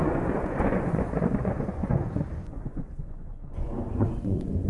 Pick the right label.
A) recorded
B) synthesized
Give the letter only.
B